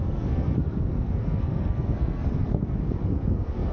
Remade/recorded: remade